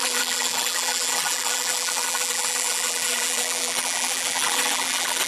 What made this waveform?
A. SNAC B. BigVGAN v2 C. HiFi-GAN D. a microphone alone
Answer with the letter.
B